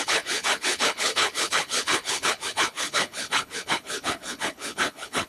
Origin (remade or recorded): remade